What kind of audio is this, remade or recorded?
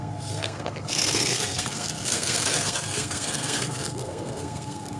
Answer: remade